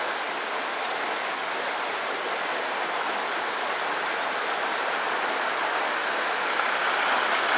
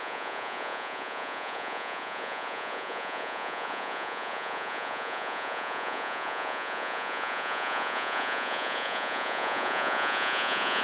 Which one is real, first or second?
first